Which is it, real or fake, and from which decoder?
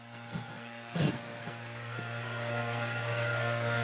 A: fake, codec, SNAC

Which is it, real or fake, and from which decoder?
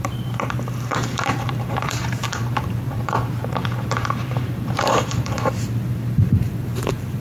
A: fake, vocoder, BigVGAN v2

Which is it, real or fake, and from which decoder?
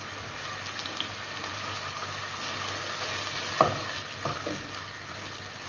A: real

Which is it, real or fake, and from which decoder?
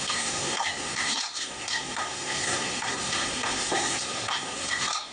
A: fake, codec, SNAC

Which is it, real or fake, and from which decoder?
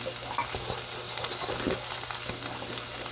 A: real